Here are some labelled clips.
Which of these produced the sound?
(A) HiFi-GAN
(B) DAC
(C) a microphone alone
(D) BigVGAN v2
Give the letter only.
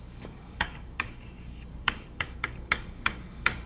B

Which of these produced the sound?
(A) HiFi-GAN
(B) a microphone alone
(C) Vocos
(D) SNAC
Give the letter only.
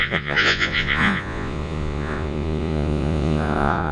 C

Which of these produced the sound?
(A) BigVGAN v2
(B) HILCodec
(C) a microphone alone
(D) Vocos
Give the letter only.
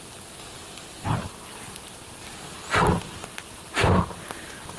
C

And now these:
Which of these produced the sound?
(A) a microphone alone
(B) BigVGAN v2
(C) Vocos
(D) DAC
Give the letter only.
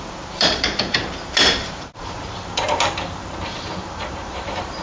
B